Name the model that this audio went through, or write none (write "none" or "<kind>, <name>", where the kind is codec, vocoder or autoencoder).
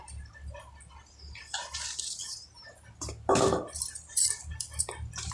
vocoder, BigVGAN v2